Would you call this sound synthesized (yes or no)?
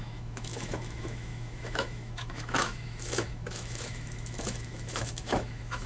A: yes